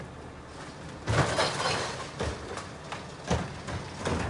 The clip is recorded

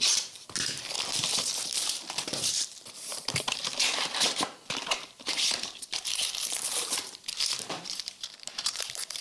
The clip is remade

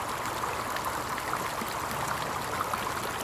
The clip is recorded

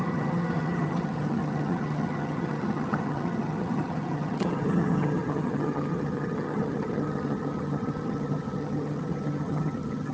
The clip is remade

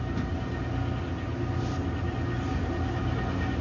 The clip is recorded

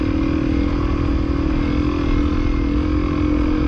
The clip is recorded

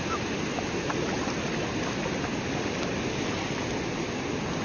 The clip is recorded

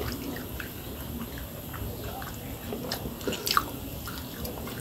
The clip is recorded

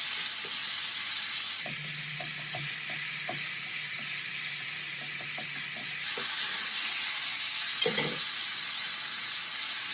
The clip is recorded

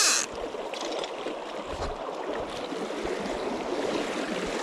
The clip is recorded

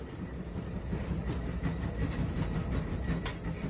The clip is recorded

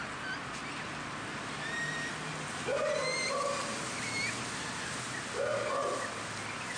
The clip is recorded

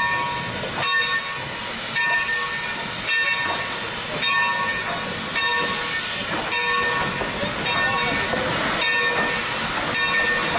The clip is recorded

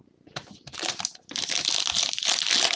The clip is recorded